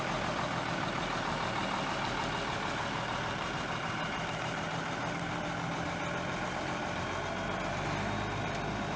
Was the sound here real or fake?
real